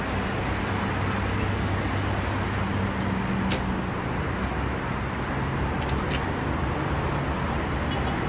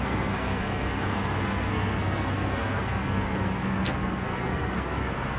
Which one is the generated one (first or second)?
second